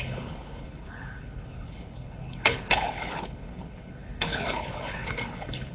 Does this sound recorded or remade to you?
remade